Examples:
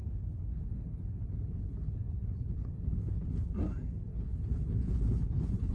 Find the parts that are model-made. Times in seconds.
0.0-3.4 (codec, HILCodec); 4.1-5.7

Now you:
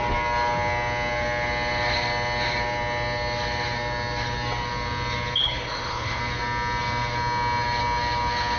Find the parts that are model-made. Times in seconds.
5.4-6.2 (codec, HILCodec)

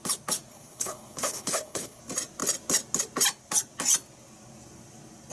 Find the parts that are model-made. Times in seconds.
0.5-2.0 (codec, HILCodec)